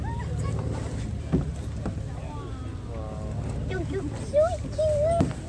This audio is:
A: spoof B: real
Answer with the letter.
B